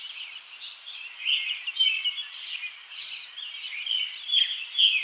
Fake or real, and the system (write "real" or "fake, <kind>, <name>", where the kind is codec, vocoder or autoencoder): real